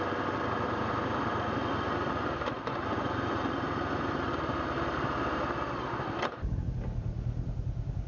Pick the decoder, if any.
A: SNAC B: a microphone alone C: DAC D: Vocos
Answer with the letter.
B